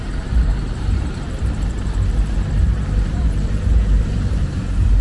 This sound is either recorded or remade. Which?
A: remade